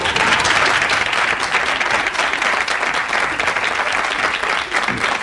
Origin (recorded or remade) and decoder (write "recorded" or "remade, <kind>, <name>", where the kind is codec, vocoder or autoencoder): recorded